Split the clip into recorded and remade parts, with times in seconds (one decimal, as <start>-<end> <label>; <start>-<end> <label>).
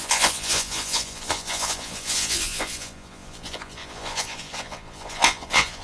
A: 0.0-5.8 remade